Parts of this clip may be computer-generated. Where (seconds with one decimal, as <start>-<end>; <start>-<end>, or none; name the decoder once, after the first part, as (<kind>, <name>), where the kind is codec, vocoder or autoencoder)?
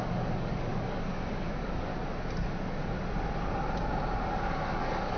0.0-1.9 (codec, DAC); 4.3-5.2